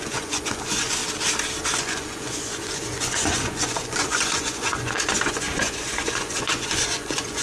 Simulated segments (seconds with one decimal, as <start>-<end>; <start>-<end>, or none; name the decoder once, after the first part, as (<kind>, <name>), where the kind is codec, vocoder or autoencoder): 0.0-1.0 (vocoder, Vocos); 1.8-7.4